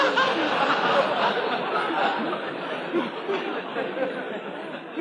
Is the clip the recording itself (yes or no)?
yes